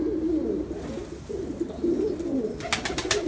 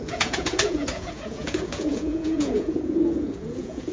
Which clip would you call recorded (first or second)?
first